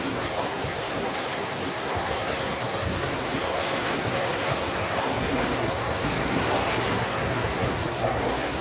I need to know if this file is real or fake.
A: fake